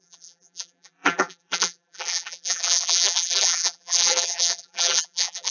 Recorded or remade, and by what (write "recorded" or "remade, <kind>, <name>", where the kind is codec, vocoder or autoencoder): remade, vocoder, BigVGAN v2